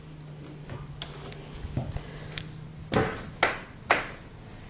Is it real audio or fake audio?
real